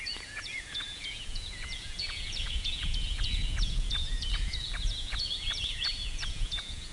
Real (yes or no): no